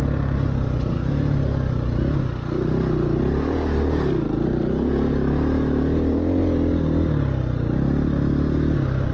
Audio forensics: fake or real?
real